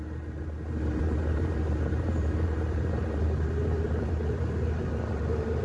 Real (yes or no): no